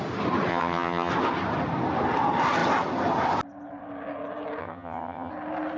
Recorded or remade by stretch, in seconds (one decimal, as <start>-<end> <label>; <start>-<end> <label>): 0.0-0.5 recorded; 0.5-1.1 remade; 1.1-4.6 recorded; 4.6-5.3 remade; 5.3-5.8 recorded